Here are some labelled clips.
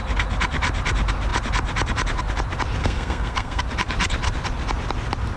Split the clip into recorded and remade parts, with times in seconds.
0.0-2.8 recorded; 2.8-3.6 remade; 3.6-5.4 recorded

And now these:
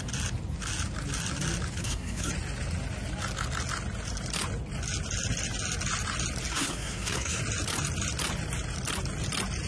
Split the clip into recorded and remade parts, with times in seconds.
0.0-1.8 recorded; 1.8-2.3 remade; 2.3-6.5 recorded; 6.5-7.4 remade; 7.4-9.7 recorded

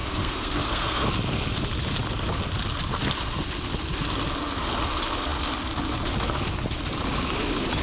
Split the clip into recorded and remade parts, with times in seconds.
0.0-1.1 remade; 1.1-7.8 recorded

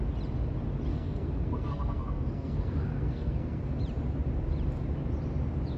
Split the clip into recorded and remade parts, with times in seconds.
0.0-0.9 recorded; 0.9-3.7 remade; 3.7-5.8 recorded

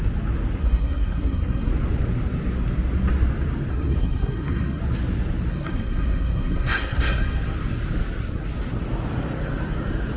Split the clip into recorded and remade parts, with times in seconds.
0.0-0.6 recorded; 0.6-1.7 remade; 1.7-3.7 recorded; 3.7-4.8 remade; 4.8-5.5 recorded; 5.5-7.2 remade; 7.2-10.2 recorded

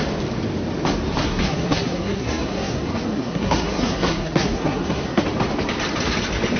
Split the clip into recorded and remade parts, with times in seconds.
0.0-1.2 recorded; 1.2-5.2 remade; 5.2-6.6 recorded